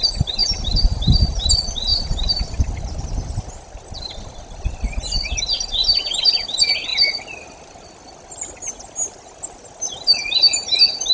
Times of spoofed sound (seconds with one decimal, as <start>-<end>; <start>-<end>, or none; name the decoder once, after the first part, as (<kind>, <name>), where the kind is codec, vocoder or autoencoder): 0.4-1.5 (vocoder, BigVGAN v2); 1.9-2.6; 5.8-6.3